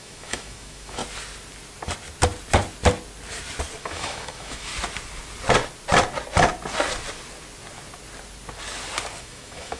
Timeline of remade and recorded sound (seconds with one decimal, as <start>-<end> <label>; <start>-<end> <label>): 0.0-1.0 remade; 1.0-3.8 recorded; 3.8-4.7 remade; 4.7-9.2 recorded; 9.2-9.8 remade